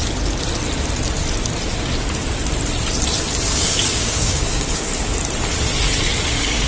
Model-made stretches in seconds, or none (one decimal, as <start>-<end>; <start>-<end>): 3.5-4.9; 6.3-6.7